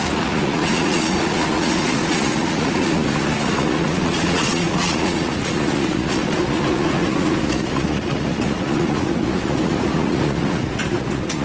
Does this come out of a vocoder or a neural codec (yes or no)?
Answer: yes